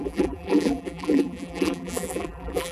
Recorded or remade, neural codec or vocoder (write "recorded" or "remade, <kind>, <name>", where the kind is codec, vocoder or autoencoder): remade, vocoder, BigVGAN v2